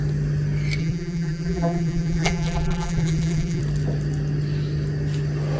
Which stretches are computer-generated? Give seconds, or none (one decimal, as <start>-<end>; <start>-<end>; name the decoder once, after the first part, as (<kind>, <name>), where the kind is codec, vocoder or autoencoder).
0.8-3.6 (vocoder, BigVGAN v2)